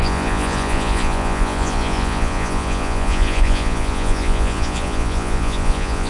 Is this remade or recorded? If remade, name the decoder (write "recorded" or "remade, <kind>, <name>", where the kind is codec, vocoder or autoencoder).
remade, vocoder, Vocos